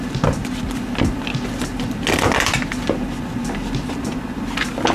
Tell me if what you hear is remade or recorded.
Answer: recorded